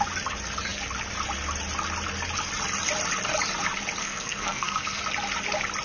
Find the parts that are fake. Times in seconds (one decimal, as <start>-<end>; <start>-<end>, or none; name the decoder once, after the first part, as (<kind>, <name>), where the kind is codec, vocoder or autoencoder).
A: 4.0-5.0 (codec, SNAC)